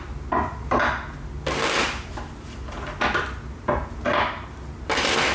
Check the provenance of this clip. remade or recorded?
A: recorded